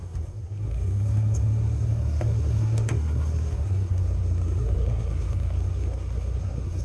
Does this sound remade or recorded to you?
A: remade